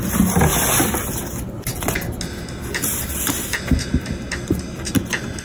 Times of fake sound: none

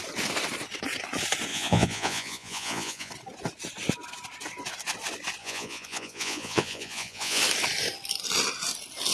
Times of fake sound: 1.5-3.1 (vocoder, Vocos); 5.4-7.4

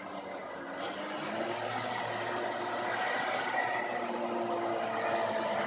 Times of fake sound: none

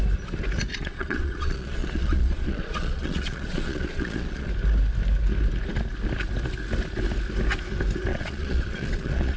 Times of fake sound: 0.7-4.5 (vocoder, Vocos); 8.1-9.4

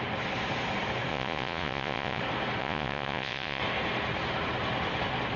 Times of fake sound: 1.1-2.2 (vocoder, Vocos); 2.6-3.6

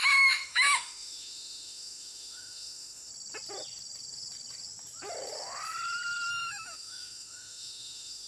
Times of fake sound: 0.0-3.1 (autoencoder, DAC-VAE); 6.3-8.3